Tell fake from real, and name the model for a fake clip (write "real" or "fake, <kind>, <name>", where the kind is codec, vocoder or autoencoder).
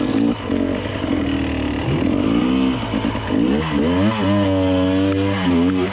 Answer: real